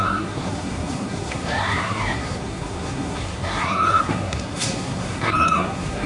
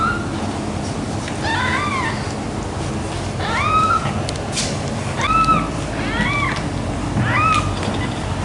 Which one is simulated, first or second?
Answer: first